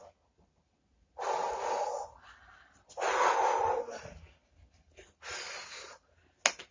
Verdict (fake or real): real